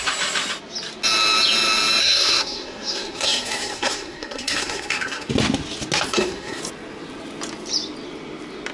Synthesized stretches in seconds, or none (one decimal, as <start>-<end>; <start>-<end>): 2.0-5.3; 6.1-6.6